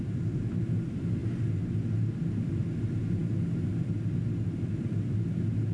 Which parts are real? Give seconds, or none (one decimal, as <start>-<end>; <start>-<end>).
0.0-5.7